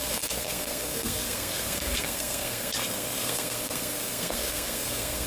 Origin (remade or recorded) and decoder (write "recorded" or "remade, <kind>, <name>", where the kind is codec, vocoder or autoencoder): remade, codec, SNAC